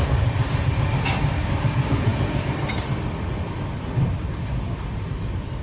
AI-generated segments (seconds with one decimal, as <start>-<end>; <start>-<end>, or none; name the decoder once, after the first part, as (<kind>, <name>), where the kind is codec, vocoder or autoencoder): none